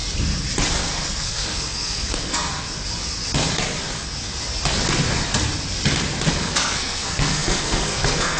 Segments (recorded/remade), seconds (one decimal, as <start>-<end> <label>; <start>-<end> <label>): 0.0-0.7 recorded; 0.7-2.5 remade; 2.5-6.3 recorded; 6.3-8.4 remade

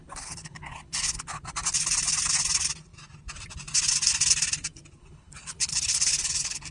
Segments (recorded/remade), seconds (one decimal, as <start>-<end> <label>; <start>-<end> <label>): 0.0-1.4 remade; 1.4-5.0 recorded; 5.0-6.7 remade